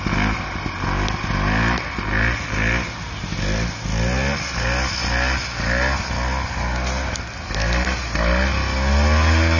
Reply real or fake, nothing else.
real